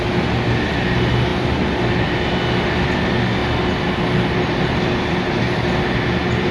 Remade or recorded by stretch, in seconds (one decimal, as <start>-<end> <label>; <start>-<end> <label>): 0.0-6.5 recorded